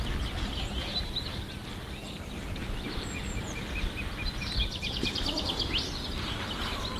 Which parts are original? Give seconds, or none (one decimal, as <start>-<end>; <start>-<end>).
0.0-2.0; 5.4-7.0